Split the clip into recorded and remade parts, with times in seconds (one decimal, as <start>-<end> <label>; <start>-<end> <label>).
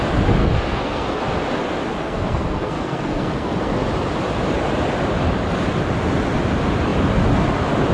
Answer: 0.0-0.4 recorded; 0.4-1.2 remade; 1.2-2.0 recorded; 2.0-3.7 remade; 3.7-7.9 recorded